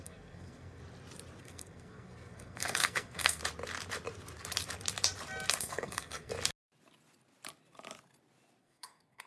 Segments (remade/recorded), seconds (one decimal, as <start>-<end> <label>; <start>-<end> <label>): 0.0-0.8 remade; 0.8-1.4 recorded; 1.4-3.4 remade; 3.4-5.6 recorded; 5.6-6.3 remade; 6.3-8.6 recorded; 8.6-9.3 remade